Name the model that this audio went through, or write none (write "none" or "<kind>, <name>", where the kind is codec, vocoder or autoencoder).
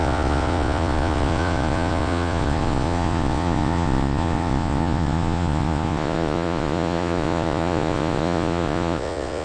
vocoder, Vocos